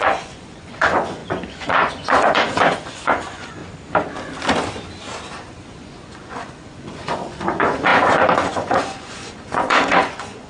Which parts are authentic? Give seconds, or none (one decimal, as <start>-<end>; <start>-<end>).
3.6-5.4